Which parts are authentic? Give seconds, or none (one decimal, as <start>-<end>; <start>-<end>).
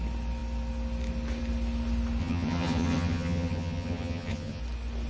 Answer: 0.0-2.2; 4.6-5.1